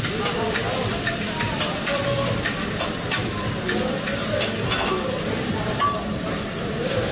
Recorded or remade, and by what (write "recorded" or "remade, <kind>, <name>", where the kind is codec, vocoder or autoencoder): remade, vocoder, BigVGAN v2